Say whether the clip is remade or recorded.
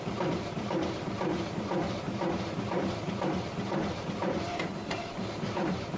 remade